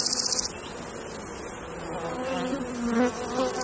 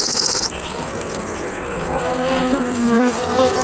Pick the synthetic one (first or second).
second